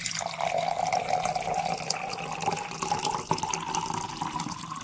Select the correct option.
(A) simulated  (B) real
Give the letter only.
B